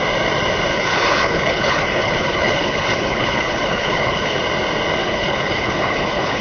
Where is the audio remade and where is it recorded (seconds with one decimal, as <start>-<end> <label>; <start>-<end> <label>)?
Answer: 0.0-0.7 recorded; 0.7-4.4 remade; 4.4-5.0 recorded; 5.0-6.4 remade